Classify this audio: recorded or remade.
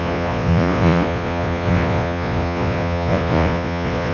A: remade